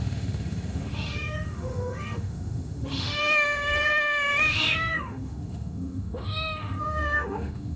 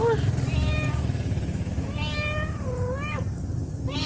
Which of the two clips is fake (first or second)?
first